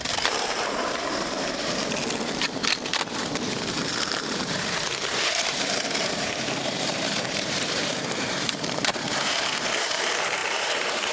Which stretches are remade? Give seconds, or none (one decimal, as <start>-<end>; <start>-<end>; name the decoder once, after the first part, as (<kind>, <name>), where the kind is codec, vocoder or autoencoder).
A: 0.0-1.8 (vocoder, BigVGAN v2); 3.0-11.1